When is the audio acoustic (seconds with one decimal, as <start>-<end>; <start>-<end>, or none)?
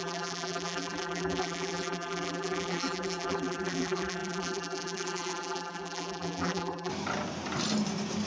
6.9-8.3